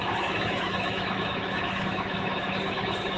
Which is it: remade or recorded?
remade